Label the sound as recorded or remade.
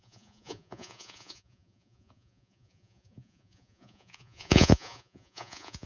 remade